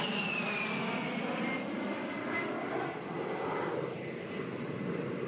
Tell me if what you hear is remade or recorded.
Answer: recorded